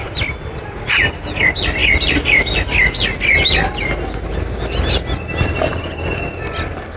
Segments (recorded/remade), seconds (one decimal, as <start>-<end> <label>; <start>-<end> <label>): 0.0-7.0 recorded